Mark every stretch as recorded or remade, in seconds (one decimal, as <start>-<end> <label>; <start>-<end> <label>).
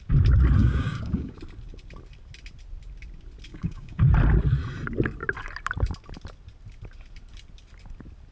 0.0-0.6 recorded; 0.6-1.4 remade; 1.4-3.5 recorded; 3.5-4.1 remade; 4.1-8.3 recorded